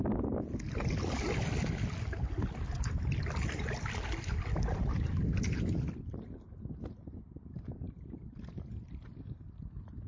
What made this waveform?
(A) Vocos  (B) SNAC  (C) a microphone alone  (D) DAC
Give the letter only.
C